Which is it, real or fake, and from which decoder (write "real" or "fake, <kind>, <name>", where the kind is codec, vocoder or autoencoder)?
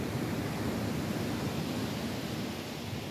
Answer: fake, vocoder, BigVGAN v2